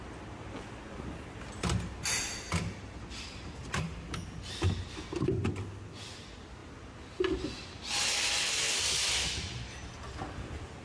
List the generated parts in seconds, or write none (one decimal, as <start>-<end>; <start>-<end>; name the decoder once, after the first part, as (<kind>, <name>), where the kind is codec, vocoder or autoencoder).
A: none